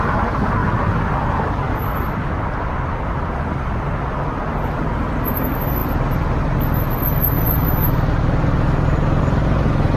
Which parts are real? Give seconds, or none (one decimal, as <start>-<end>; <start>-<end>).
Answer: 0.0-10.0